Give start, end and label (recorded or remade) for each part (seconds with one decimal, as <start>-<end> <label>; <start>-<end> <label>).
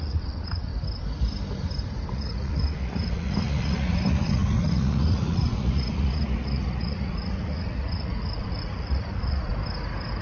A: 0.0-0.7 remade; 0.7-2.1 recorded; 2.1-9.5 remade; 9.5-10.2 recorded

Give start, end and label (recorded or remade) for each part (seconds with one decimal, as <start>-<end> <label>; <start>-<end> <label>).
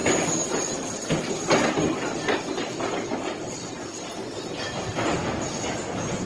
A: 0.0-6.3 recorded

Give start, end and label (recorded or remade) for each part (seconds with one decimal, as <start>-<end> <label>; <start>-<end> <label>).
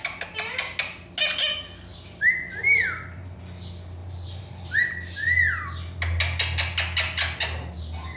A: 0.0-1.9 recorded; 1.9-3.4 remade; 3.4-4.0 recorded; 4.0-4.6 remade; 4.6-8.2 recorded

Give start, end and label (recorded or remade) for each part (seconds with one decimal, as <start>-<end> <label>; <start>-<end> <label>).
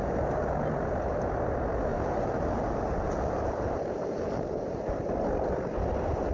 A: 0.0-1.9 recorded; 1.9-5.1 remade; 5.1-6.3 recorded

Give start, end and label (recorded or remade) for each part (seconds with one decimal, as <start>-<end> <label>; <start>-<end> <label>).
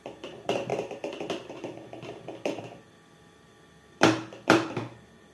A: 0.0-5.3 remade